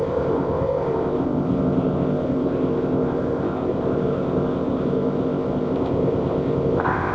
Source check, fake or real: fake